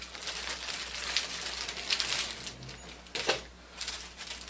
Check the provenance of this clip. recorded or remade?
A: recorded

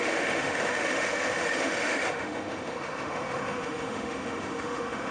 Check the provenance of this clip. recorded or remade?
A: remade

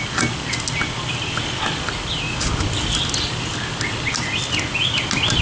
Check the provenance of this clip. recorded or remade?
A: recorded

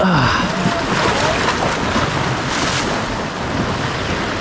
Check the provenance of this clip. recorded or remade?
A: recorded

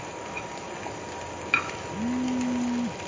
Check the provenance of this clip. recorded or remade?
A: recorded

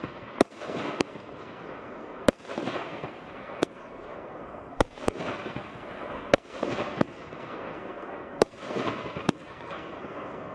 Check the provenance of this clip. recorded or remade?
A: remade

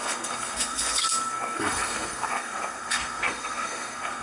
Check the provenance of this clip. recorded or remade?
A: remade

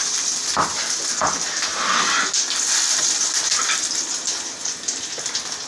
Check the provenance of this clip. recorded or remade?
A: remade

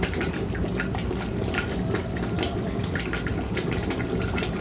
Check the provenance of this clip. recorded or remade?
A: recorded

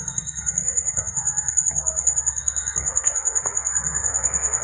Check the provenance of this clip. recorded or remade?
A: remade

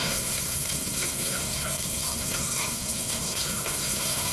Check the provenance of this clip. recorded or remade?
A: remade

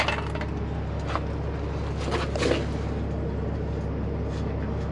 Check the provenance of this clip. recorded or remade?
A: recorded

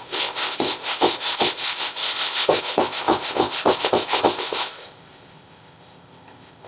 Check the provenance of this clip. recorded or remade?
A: remade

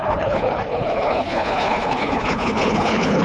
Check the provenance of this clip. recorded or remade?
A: remade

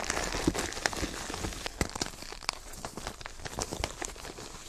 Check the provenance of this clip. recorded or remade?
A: recorded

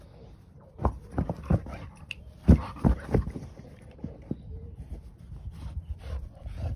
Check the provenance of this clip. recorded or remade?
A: remade